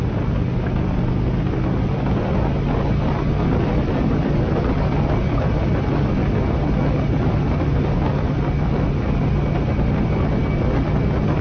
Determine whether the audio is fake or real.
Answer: real